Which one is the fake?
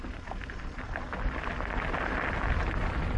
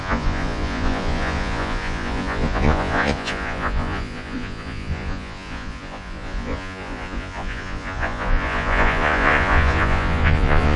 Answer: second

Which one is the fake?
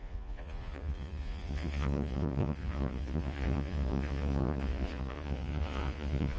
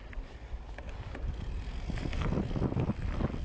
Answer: first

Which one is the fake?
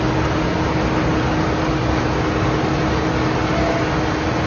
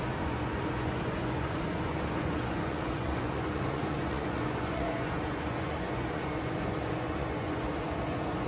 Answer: second